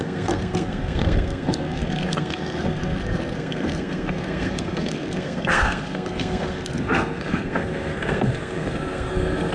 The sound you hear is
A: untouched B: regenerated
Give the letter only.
B